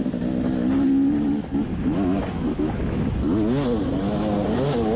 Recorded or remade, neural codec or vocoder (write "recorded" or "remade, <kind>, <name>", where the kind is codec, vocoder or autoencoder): recorded